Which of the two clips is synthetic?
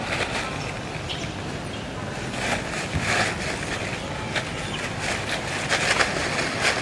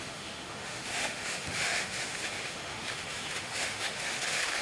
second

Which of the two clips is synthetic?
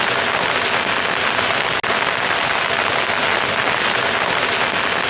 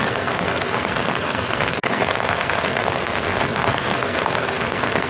second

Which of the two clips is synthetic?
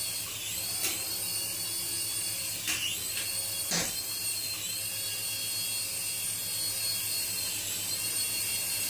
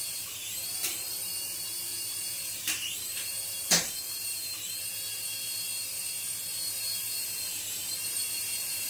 second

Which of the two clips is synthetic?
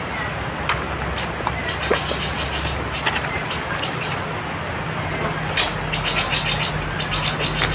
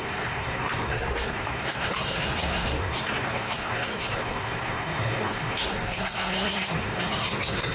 second